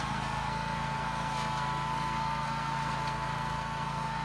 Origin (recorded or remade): remade